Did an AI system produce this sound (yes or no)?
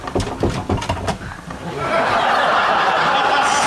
no